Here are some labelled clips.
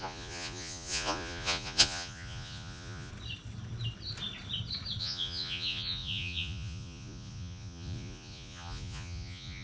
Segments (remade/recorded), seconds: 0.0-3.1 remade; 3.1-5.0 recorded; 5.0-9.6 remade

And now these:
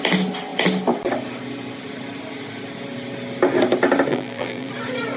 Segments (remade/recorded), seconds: 0.0-4.1 recorded; 4.1-4.7 remade; 4.7-5.2 recorded

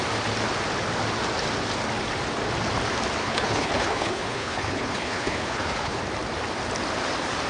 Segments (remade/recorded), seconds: 0.0-3.2 recorded; 3.2-6.0 remade; 6.0-7.5 recorded

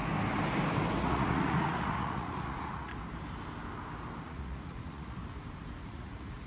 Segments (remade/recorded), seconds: 0.0-1.0 recorded; 1.0-2.9 remade; 2.9-4.2 recorded; 4.2-5.2 remade; 5.2-5.8 recorded; 5.8-6.5 remade

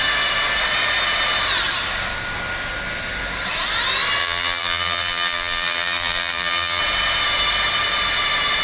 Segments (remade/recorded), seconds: 0.0-4.2 recorded; 4.2-6.8 remade; 6.8-8.6 recorded